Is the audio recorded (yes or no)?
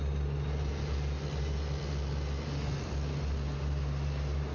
yes